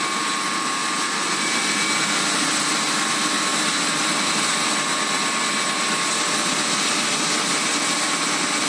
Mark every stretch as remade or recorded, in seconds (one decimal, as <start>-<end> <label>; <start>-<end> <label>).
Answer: 0.0-3.5 recorded; 3.5-4.2 remade; 4.2-8.7 recorded